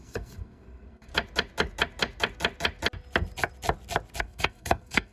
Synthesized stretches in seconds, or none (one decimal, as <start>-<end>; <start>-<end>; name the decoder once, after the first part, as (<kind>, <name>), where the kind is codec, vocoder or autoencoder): 0.0-1.1 (codec, SNAC); 4.2-5.1